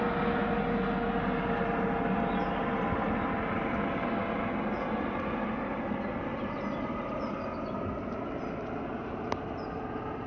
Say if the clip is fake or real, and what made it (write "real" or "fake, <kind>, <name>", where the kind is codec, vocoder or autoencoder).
real